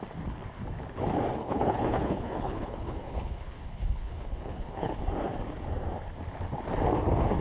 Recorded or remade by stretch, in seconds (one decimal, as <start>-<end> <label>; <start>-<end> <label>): 0.0-1.4 recorded; 1.4-5.0 remade; 5.0-7.4 recorded

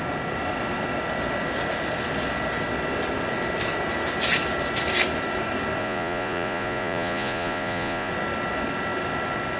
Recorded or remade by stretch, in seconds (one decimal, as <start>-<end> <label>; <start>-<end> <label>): 0.0-5.8 recorded; 5.8-8.1 remade; 8.1-9.6 recorded

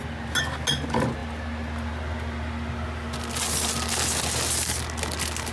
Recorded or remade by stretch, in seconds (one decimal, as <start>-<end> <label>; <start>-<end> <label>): 0.0-5.5 recorded

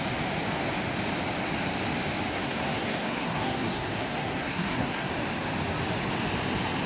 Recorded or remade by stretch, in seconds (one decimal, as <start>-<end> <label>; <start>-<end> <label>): 0.0-2.3 recorded; 2.3-5.1 remade; 5.1-6.9 recorded

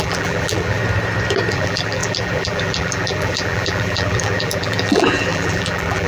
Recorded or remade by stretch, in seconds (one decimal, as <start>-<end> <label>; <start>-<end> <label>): 0.0-0.8 remade; 0.8-1.5 recorded; 1.5-6.1 remade

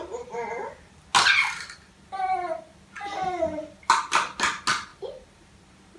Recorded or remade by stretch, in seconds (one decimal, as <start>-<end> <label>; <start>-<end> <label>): 0.0-6.0 recorded

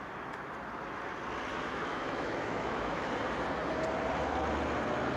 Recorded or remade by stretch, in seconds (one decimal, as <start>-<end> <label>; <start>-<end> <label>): 0.0-1.5 recorded; 1.5-3.1 remade; 3.1-5.2 recorded

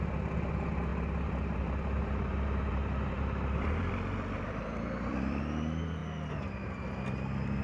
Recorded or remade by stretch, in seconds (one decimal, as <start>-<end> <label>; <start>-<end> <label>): 0.0-0.9 recorded; 0.9-5.4 remade; 5.4-7.6 recorded